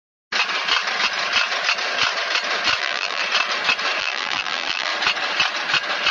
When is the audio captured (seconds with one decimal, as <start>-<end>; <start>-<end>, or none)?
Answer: 0.0-2.8; 3.2-4.0; 4.9-6.1